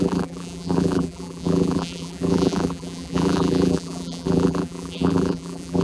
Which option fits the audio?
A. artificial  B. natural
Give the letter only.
A